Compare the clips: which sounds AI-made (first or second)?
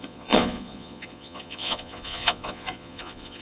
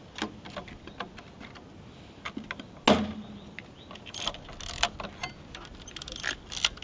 first